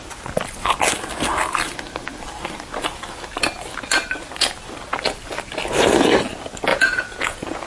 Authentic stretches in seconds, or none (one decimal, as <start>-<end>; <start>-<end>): 0.0-6.7